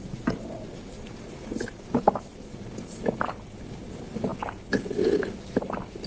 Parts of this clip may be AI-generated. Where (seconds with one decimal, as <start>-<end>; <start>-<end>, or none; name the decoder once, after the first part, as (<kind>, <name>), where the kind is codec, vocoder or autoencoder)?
none